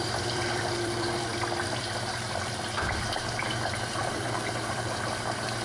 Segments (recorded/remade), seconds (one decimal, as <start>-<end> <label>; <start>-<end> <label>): 0.0-5.6 remade